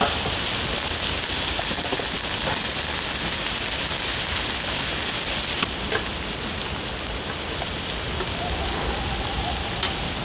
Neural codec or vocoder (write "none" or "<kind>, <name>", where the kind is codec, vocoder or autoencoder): none